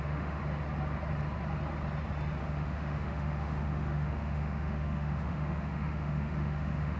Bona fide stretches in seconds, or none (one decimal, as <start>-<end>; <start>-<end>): 0.4-2.4